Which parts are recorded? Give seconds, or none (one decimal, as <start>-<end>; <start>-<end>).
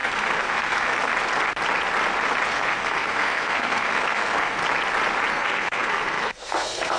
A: 1.1-2.5; 4.6-5.3